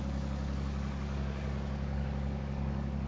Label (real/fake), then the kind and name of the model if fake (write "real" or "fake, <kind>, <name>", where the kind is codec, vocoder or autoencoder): fake, codec, DAC